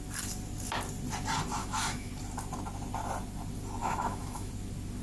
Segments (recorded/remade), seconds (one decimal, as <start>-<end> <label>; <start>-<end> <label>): 0.0-1.6 recorded; 1.6-2.1 remade; 2.1-3.8 recorded; 3.8-4.5 remade; 4.5-5.0 recorded